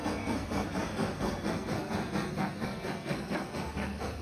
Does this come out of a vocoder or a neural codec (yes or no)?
yes